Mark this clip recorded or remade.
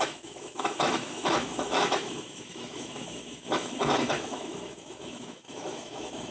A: remade